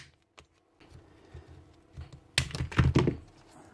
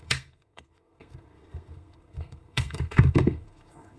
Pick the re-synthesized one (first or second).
second